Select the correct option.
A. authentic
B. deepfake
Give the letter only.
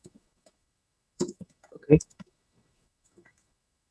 B